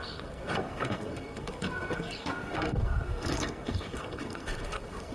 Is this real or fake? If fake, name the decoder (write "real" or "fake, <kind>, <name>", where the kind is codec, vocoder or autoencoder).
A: fake, codec, SNAC